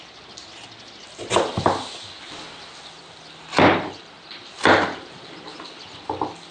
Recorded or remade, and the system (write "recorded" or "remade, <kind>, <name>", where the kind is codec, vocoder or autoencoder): recorded